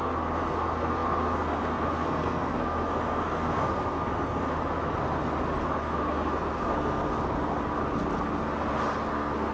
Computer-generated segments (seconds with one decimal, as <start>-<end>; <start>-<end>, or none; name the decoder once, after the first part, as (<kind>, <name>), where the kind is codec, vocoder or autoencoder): 0.0-4.6 (codec, SNAC); 5.8-7.1; 9.1-9.5